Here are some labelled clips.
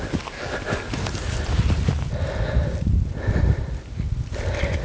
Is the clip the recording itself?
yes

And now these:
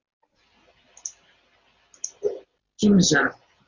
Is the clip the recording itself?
yes